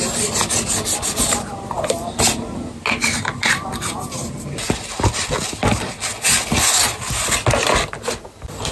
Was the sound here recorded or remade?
recorded